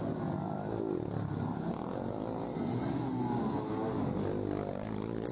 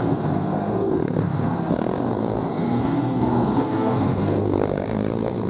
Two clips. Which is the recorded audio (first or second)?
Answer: first